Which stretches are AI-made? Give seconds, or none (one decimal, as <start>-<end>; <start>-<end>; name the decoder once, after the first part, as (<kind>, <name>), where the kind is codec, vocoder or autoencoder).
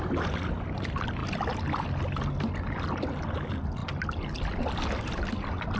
none